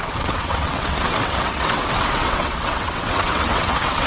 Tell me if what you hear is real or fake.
fake